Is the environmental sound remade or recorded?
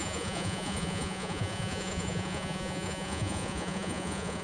remade